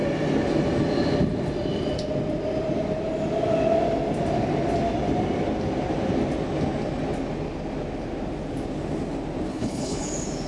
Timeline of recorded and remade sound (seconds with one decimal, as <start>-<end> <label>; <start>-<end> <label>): 0.0-9.5 recorded; 9.5-10.1 remade; 10.1-10.5 recorded